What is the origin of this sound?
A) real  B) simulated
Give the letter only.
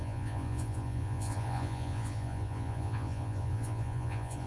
B